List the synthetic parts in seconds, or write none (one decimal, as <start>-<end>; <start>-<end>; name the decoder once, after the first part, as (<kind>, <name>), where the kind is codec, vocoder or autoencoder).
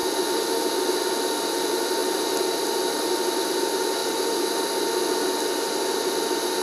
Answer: 2.0-3.1 (vocoder, BigVGAN v2); 4.0-4.6